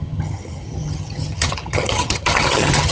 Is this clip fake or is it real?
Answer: fake